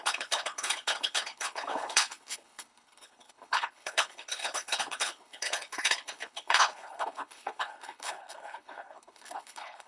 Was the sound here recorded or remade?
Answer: remade